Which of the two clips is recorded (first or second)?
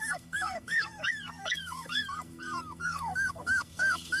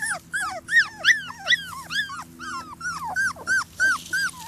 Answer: second